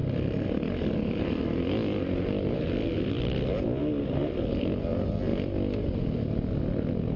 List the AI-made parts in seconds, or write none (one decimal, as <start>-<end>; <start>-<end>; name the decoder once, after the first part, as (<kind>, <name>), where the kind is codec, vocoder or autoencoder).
none